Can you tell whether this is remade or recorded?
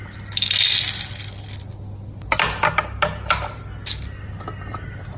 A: recorded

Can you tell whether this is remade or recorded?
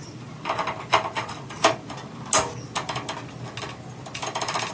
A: recorded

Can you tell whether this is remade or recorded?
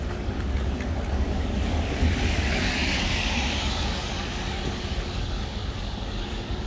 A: remade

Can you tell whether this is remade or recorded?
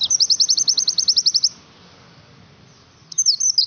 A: recorded